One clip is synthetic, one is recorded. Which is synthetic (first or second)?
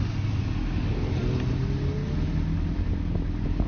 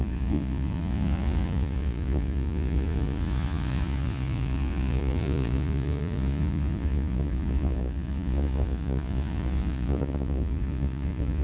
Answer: second